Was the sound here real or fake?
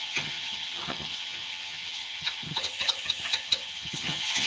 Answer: fake